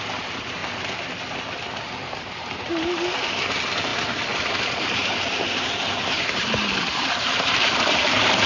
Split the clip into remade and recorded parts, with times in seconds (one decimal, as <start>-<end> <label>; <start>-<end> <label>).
0.0-0.6 remade; 0.6-2.2 recorded; 2.2-3.9 remade; 3.9-4.8 recorded; 4.8-8.5 remade